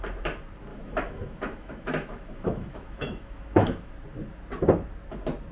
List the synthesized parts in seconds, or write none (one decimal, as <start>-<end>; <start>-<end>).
0.7-3.9

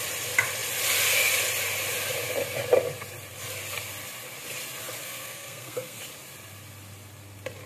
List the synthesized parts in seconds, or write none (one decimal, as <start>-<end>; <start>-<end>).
5.0-6.0

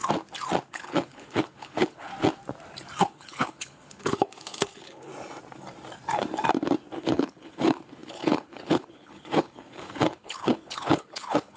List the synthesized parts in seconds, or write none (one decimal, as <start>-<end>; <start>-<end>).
0.7-2.1; 3.0-5.1; 7.0-11.6

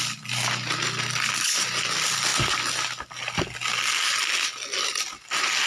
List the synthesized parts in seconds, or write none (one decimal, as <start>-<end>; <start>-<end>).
none

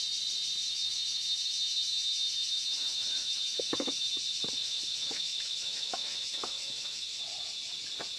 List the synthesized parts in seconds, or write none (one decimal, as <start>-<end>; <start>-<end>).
0.6-4.1; 4.6-7.2